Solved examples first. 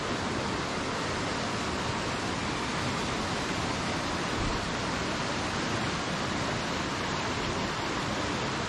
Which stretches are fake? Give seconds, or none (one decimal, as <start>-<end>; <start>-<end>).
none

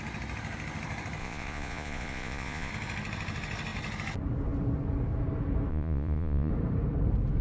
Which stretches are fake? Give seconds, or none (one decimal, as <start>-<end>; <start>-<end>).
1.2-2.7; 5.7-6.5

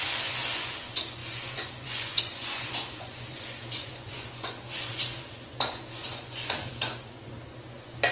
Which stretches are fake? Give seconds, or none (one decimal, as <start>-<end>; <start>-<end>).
0.0-8.1

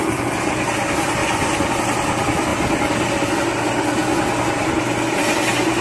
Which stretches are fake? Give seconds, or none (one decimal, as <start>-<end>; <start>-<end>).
1.2-1.8